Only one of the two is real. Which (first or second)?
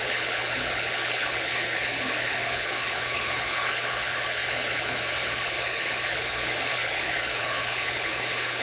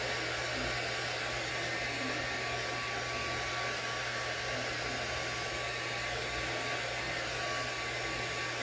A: second